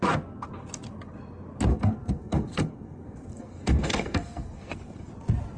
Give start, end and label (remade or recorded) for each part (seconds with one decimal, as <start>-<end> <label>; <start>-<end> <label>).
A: 0.0-1.7 recorded; 1.7-5.1 remade; 5.1-5.6 recorded